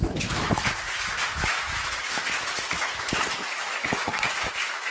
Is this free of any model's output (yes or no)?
no